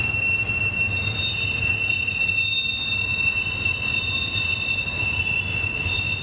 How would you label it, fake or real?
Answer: real